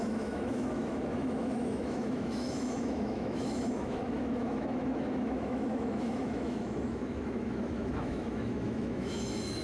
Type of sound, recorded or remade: remade